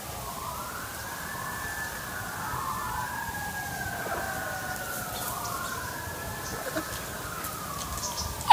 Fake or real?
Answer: real